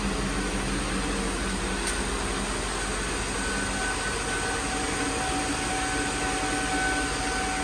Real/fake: real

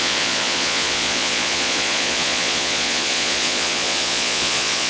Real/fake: fake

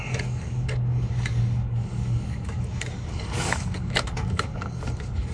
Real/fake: fake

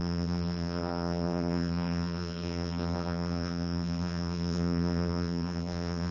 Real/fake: fake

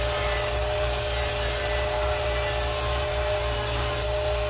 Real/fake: real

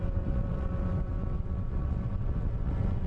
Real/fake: fake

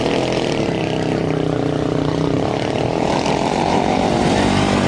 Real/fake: fake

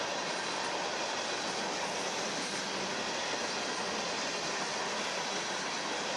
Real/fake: real